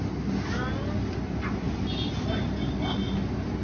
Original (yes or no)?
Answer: yes